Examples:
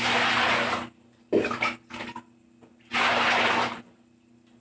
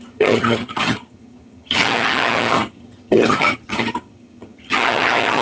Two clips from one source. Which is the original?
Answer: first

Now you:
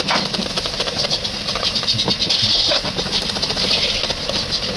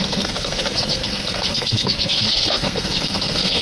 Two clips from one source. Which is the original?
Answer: first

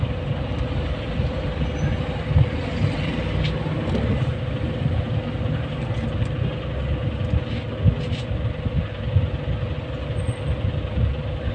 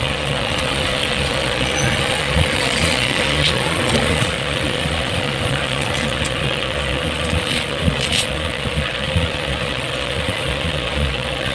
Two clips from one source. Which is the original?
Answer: first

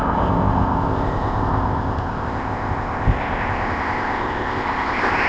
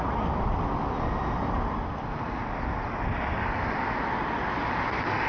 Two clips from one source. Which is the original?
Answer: second